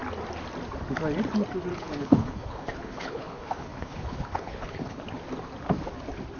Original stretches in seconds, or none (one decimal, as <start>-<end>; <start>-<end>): 0.0-1.7; 5.0-6.4